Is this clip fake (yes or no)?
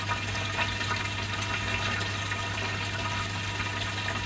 no